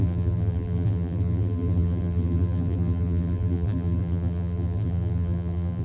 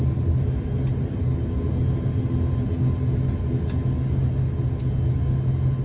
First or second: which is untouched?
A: second